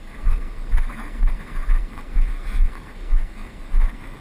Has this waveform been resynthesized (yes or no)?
yes